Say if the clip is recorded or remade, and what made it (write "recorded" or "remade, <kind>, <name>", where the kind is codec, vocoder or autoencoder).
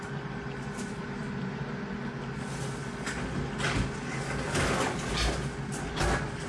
recorded